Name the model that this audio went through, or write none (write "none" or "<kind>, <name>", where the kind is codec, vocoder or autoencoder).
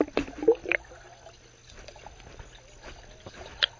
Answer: none